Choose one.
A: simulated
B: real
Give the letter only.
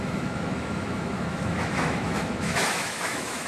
A